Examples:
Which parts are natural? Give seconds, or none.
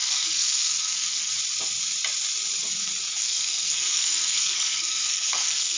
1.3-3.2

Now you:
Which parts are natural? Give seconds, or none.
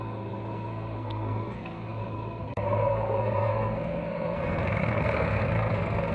none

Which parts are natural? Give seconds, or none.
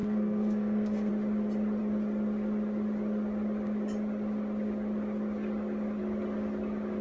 1.1-7.0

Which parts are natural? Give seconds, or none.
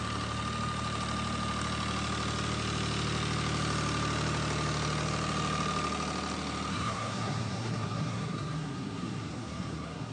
0.0-6.7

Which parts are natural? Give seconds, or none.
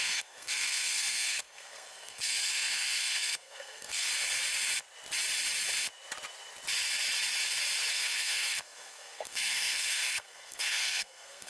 4.1-7.9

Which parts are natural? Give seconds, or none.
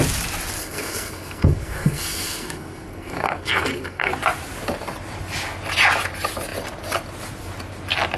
0.0-0.6; 4.1-8.2